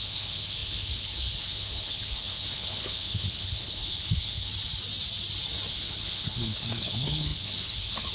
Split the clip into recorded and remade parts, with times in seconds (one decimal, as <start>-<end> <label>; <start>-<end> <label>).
0.0-4.5 remade; 4.5-5.7 recorded; 5.7-8.1 remade